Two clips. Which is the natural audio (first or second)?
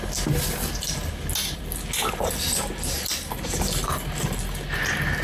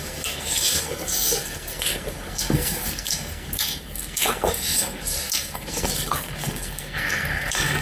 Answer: first